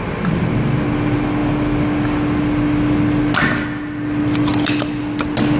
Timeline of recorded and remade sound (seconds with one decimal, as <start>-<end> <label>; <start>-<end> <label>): 0.0-5.6 recorded